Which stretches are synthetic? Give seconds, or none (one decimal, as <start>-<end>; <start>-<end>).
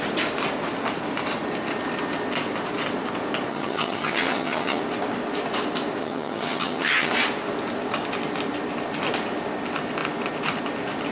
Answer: 3.5-4.8; 6.0-7.1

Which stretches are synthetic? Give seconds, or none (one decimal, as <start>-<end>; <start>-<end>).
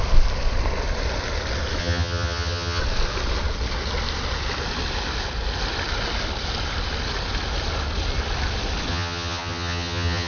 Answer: 1.8-2.8; 8.9-10.3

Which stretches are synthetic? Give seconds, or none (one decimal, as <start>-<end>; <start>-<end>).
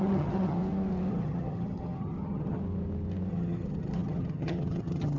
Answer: 0.0-0.6; 1.1-2.6; 3.3-5.2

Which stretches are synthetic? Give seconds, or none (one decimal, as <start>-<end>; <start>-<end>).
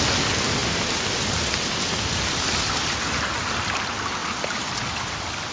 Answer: none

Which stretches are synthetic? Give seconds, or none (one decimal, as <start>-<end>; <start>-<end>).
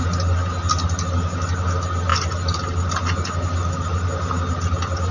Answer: none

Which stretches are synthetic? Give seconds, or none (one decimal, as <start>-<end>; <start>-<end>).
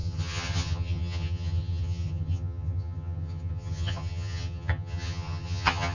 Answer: 0.0-5.9